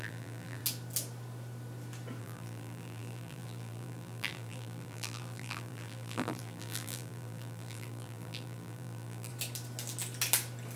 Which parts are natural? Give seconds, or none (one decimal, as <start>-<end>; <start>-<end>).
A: 0.6-2.2; 9.3-10.8